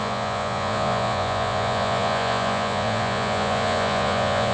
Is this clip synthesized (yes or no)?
yes